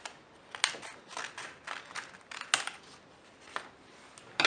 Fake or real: real